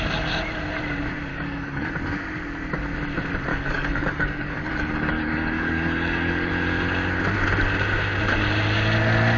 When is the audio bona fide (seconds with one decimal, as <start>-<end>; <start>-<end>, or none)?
0.0-1.3; 1.9-3.5; 6.5-9.4